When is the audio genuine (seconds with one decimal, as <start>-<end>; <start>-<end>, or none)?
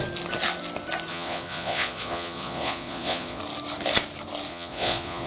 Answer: 0.0-1.1; 3.4-4.5